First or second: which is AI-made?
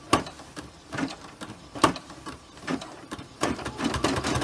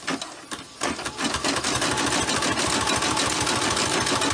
first